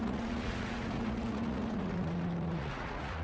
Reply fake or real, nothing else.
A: fake